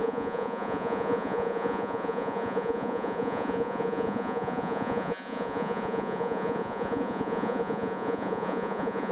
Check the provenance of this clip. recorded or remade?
remade